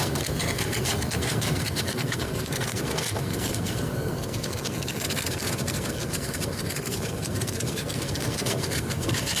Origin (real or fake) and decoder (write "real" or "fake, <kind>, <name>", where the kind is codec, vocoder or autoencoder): fake, codec, SNAC